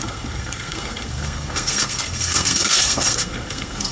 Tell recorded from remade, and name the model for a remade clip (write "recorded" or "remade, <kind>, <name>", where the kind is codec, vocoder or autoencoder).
remade, codec, SNAC